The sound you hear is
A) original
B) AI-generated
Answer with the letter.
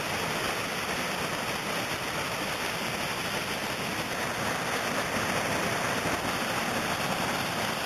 A